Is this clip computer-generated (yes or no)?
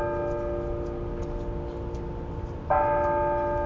no